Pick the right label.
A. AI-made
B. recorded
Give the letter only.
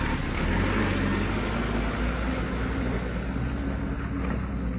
B